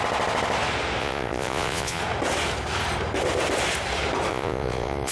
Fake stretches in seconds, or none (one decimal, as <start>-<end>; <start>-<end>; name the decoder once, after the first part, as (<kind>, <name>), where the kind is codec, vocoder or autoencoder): 1.0-2.0 (vocoder, Vocos); 4.3-5.1